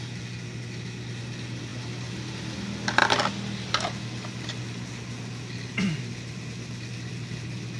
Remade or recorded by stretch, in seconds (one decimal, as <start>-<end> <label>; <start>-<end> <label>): 0.0-7.8 recorded